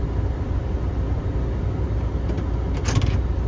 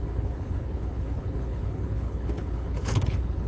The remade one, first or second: second